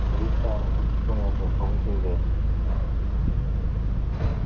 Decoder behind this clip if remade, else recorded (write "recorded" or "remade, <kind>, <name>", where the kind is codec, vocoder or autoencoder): recorded